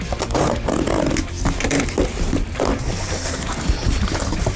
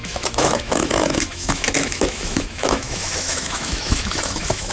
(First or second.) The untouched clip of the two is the first